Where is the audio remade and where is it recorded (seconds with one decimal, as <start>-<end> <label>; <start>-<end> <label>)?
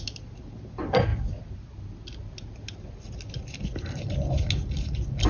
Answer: 0.0-5.3 recorded